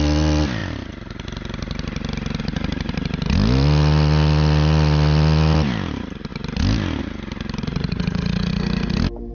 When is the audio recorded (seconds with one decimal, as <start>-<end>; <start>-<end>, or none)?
0.0-7.6; 8.5-9.3